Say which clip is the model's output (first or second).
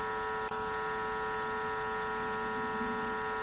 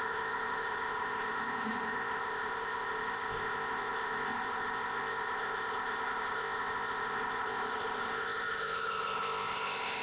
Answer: second